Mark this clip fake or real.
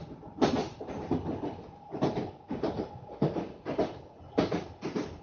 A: real